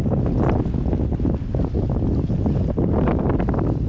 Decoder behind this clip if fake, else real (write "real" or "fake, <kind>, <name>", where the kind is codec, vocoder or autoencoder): real